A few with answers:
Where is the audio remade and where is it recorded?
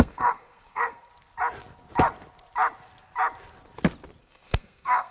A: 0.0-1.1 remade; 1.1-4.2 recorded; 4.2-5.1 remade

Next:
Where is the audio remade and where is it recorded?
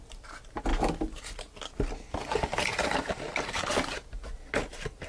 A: 0.0-5.1 recorded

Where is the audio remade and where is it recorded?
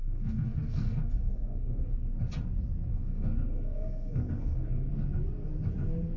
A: 0.0-1.9 remade; 1.9-2.9 recorded; 2.9-4.9 remade; 4.9-6.2 recorded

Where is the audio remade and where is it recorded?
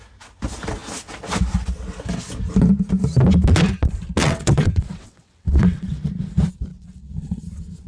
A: 0.0-4.2 recorded; 4.2-6.1 remade; 6.1-6.7 recorded; 6.7-7.4 remade; 7.4-7.9 recorded